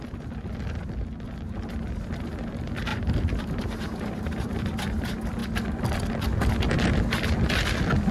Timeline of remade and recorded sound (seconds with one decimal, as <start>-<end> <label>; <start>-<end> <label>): 0.0-2.9 recorded; 2.9-4.6 remade; 4.6-8.1 recorded